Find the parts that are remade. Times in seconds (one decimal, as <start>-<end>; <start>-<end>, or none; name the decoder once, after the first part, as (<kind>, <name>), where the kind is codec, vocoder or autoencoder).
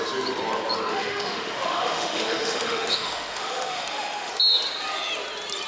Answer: 0.9-4.3 (autoencoder, DAC-VAE)